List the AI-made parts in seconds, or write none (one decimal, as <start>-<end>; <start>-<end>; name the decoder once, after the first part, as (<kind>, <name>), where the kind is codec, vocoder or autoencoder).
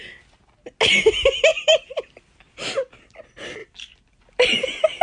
1.5-3.2 (vocoder, BigVGAN v2); 3.6-5.0